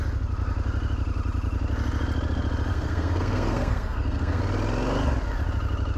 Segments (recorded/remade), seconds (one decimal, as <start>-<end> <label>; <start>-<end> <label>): 0.0-2.7 recorded; 2.7-4.4 remade; 4.4-6.0 recorded